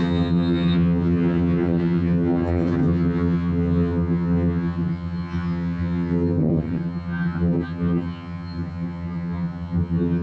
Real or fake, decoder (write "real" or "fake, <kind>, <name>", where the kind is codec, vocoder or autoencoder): fake, vocoder, HiFi-GAN